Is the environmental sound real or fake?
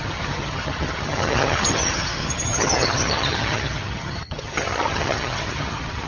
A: fake